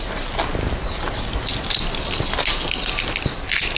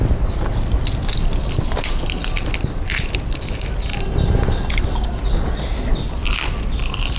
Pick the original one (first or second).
first